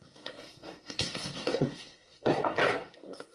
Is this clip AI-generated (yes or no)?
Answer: yes